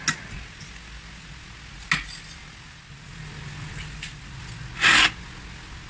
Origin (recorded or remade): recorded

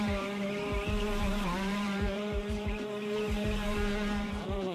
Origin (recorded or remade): remade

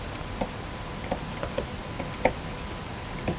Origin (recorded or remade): recorded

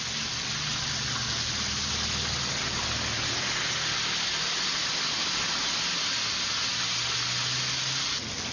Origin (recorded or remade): recorded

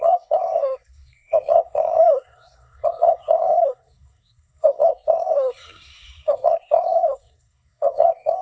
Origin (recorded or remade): remade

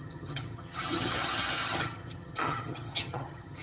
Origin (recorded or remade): remade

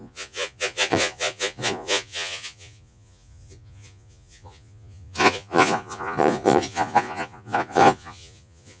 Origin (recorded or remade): remade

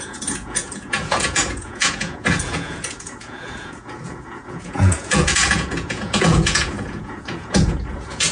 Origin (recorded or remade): remade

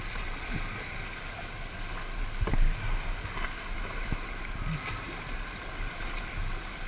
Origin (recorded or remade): recorded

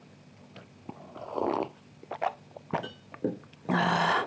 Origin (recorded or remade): recorded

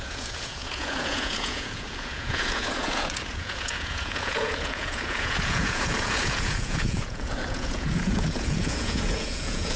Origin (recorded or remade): remade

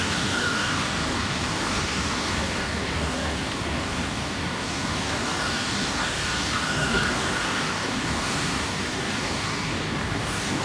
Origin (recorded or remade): remade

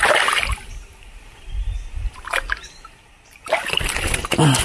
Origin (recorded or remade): recorded